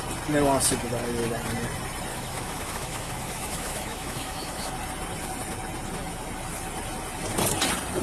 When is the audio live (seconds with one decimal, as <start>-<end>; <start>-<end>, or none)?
0.0-2.1; 4.7-8.0